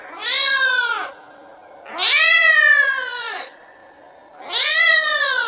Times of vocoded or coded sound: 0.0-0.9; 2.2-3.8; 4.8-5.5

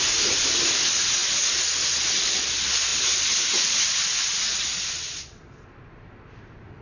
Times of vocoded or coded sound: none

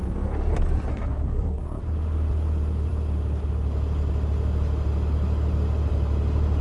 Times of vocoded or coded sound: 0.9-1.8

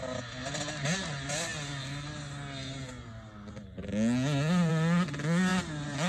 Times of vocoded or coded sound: none

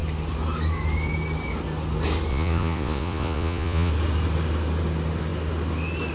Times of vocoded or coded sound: 2.3-3.9

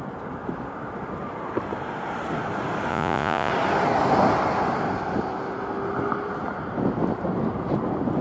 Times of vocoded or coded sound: 2.9-3.5